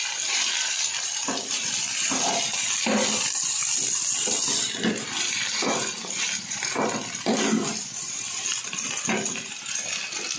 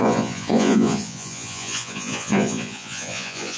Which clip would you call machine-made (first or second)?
second